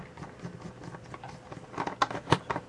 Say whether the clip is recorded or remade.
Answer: recorded